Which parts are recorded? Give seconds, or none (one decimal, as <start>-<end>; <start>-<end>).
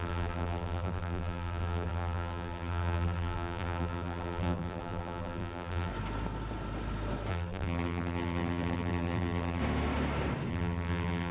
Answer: 5.9-7.3; 9.6-10.5